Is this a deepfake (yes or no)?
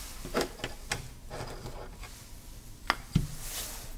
no